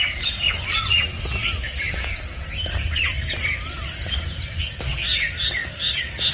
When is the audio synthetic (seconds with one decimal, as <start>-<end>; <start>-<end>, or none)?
none